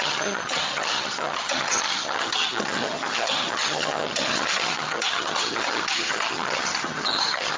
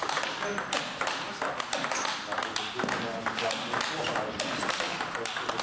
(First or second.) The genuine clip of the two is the second